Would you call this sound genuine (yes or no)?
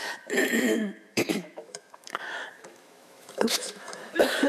no